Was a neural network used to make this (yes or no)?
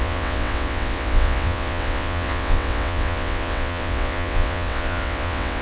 yes